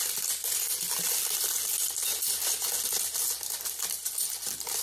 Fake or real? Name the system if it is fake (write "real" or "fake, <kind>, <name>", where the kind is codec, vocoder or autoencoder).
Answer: real